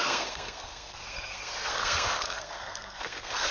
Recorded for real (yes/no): no